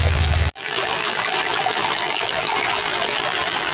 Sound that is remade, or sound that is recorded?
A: remade